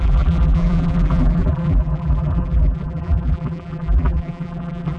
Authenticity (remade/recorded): remade